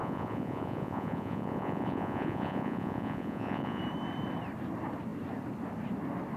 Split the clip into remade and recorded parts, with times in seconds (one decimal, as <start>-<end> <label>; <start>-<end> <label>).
0.0-3.8 remade; 3.8-6.4 recorded